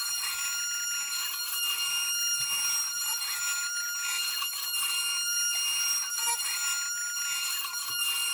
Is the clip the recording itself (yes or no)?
yes